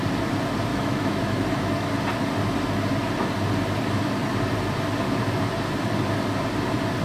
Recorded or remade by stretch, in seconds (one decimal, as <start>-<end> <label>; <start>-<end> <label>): 0.0-0.7 recorded; 0.7-1.9 remade; 1.9-7.0 recorded